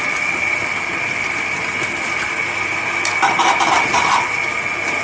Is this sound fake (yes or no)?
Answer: no